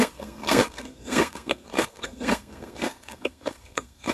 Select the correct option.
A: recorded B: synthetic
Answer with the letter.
B